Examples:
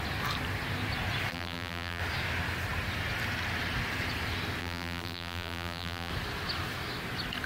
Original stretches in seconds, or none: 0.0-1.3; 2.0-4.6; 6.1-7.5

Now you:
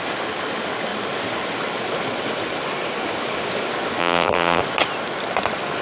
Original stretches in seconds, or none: 0.0-4.0; 4.6-5.8

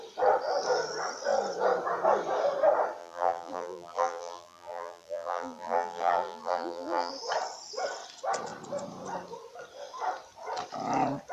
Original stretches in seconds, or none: 0.0-3.0; 7.1-11.3

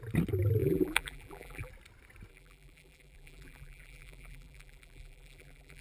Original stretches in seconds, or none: 0.0-0.6; 1.7-2.3

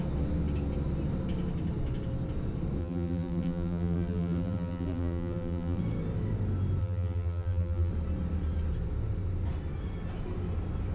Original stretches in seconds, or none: 0.0-2.8; 5.8-6.8; 7.9-10.9

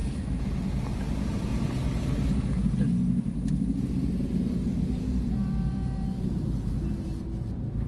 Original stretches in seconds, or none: 0.0-0.7; 1.5-6.2

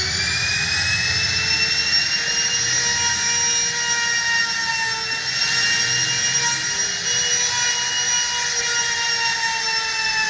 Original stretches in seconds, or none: 0.0-10.3

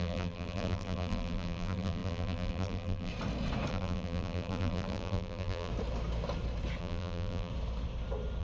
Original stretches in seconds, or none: 3.1-3.7; 5.7-6.8; 7.5-8.4